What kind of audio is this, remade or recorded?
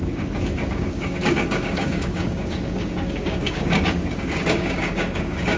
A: remade